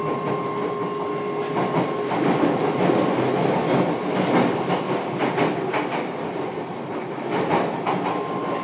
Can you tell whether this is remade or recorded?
recorded